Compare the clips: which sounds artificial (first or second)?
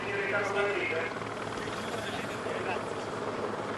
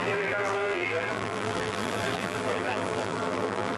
second